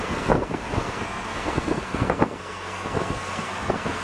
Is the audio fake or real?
fake